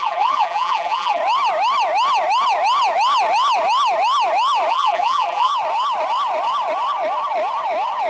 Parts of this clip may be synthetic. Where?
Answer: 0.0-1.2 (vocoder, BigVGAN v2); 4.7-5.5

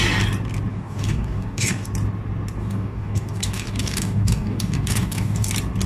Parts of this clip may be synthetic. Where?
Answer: 0.7-1.9 (codec, DAC); 2.6-5.5

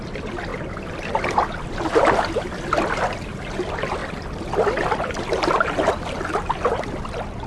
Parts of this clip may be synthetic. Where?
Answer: none

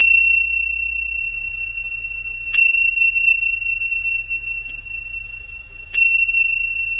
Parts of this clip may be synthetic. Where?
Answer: 1.2-7.0 (vocoder, BigVGAN v2)

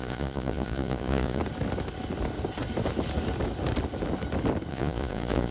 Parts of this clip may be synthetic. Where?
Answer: 0.0-1.4 (vocoder, Vocos); 4.7-5.5

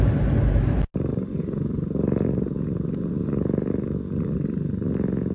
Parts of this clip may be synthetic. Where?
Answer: none